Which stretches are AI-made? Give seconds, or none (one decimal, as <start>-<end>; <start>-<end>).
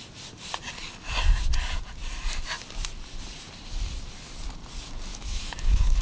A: 5.1-6.0